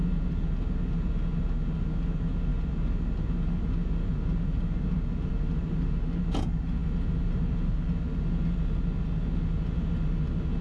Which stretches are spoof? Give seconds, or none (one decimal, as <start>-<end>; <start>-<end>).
none